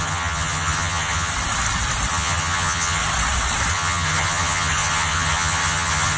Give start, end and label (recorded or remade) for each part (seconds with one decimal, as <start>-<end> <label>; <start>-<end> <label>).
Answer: 0.0-1.3 remade; 1.3-2.1 recorded; 2.1-3.0 remade; 3.0-3.7 recorded; 3.7-6.2 remade